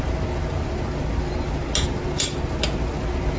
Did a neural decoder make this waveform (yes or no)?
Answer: no